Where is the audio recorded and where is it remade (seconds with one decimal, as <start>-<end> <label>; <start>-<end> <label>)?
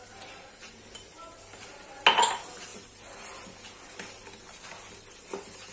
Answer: 0.0-5.7 recorded